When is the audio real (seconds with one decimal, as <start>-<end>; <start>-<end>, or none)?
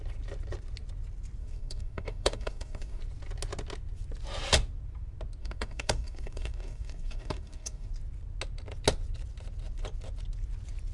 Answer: 0.0-1.4; 3.0-5.4; 7.9-10.9